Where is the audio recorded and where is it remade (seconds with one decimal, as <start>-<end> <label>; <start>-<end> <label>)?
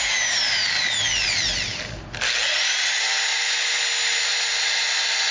0.0-3.3 recorded; 3.3-3.8 remade; 3.8-5.3 recorded